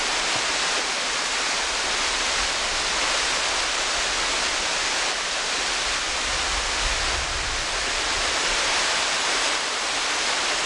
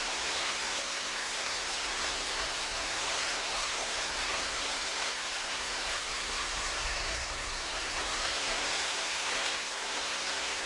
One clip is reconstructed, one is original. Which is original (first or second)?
first